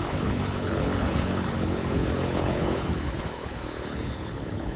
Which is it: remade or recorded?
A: remade